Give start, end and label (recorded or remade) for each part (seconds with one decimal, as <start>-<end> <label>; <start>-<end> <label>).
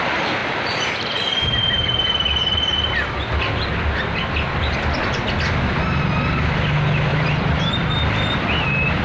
0.0-0.4 recorded; 0.4-3.7 remade; 3.7-7.1 recorded; 7.1-8.0 remade; 8.0-9.0 recorded